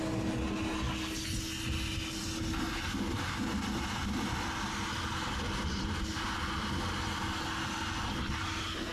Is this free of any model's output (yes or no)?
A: yes